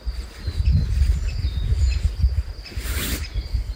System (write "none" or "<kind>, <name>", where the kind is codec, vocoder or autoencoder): none